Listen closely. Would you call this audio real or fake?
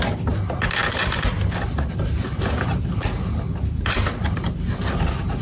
real